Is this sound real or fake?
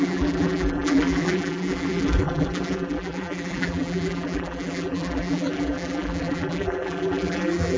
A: fake